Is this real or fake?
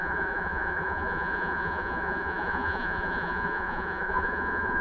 fake